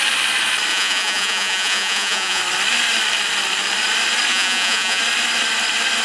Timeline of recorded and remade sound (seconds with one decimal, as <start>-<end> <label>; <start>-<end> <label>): 0.0-0.7 recorded; 0.7-2.4 remade; 2.4-4.3 recorded; 4.3-5.0 remade; 5.0-6.0 recorded